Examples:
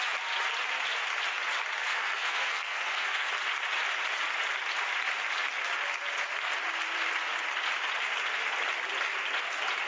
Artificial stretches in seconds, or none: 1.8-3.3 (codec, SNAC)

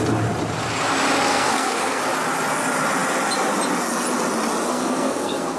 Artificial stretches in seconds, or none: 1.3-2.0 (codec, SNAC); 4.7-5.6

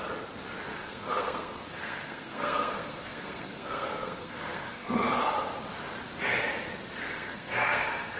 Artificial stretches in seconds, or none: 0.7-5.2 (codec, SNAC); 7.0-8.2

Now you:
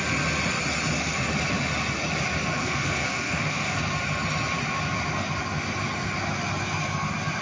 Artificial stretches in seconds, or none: 2.6-3.8 (codec, SNAC)

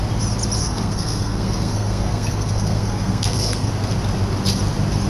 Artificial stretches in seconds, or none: 0.6-3.7 (codec, SNAC)